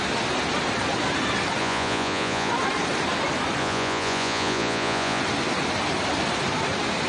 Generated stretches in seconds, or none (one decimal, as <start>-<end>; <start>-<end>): 1.6-2.5; 3.6-5.2